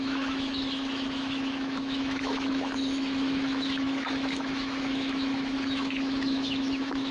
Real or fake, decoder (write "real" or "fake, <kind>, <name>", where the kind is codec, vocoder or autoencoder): fake, autoencoder, DAC-VAE